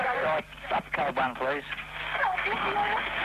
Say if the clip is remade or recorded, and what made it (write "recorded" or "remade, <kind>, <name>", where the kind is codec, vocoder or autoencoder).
recorded